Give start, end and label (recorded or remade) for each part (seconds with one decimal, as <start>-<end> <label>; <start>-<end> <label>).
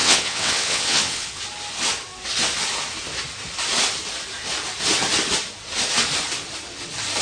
0.0-1.4 remade; 1.4-7.2 recorded